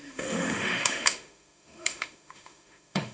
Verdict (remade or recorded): remade